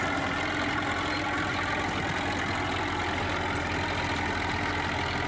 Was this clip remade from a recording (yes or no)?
no